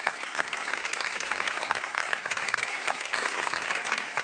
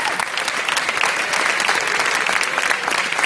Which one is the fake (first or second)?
first